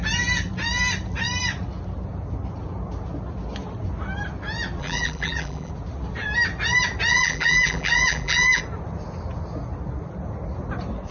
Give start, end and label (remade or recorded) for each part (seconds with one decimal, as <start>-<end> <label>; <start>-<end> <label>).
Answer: 0.0-4.8 recorded; 4.8-5.7 remade; 5.7-7.1 recorded; 7.1-8.6 remade; 8.6-11.1 recorded